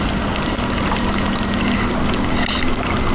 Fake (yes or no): no